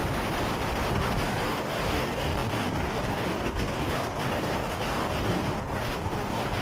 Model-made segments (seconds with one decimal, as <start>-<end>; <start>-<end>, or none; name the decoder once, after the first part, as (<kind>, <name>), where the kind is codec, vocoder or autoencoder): 0.9-6.6 (codec, DAC)